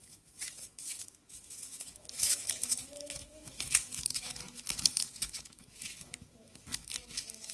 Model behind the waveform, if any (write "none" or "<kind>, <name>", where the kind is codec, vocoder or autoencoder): autoencoder, DAC-VAE